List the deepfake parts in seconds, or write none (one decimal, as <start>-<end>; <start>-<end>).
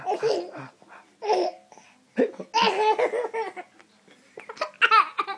none